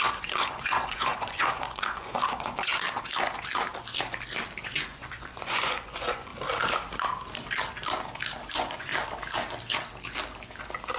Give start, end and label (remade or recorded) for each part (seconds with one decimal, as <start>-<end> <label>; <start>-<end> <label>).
0.0-2.7 remade; 2.7-4.6 recorded; 4.6-6.3 remade; 6.3-8.5 recorded; 8.5-8.9 remade; 8.9-11.0 recorded